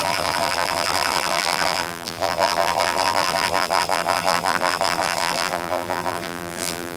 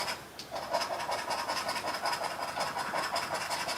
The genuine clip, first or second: second